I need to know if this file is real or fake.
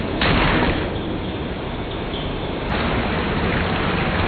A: real